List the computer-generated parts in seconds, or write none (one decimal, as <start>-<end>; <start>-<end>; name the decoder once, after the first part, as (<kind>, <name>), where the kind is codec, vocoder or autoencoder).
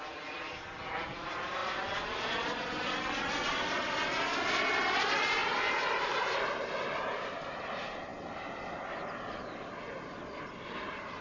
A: 5.4-6.5 (vocoder, BigVGAN v2)